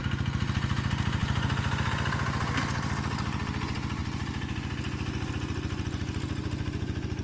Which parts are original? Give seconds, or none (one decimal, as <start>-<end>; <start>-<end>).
0.0-7.2

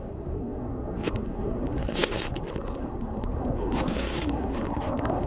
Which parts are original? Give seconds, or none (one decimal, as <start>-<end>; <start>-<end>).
none

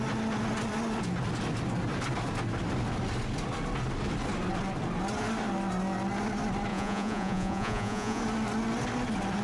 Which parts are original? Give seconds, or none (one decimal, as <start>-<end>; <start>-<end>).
0.0-6.7; 8.2-9.4

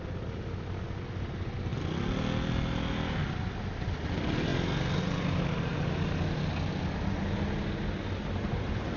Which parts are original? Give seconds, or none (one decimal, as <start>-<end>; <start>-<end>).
0.0-9.0

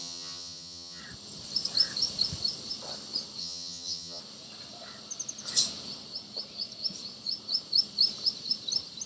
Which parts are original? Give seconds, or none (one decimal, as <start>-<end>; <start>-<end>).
1.0-3.4; 4.2-9.1